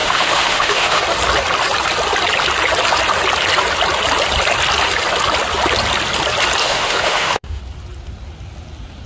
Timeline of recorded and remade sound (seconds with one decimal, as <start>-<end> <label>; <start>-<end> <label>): 0.0-1.0 remade; 1.0-6.6 recorded; 6.6-7.6 remade; 7.6-9.1 recorded